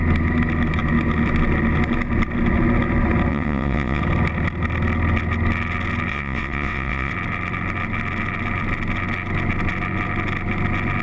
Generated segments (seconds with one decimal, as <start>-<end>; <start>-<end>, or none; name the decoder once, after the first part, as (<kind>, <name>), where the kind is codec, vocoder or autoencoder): 3.3-4.0 (vocoder, WaveNeXt); 6.1-7.1